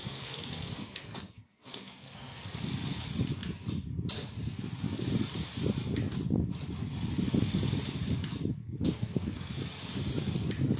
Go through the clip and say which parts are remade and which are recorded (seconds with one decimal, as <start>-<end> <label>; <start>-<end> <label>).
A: 0.0-2.6 remade; 2.6-8.6 recorded; 8.6-9.5 remade; 9.5-10.8 recorded